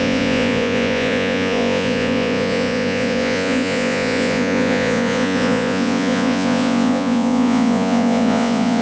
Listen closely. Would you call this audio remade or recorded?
remade